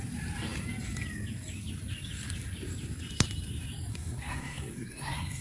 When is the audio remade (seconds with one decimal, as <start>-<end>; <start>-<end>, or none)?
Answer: 3.9-5.4